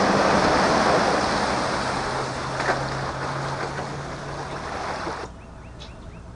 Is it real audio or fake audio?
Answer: real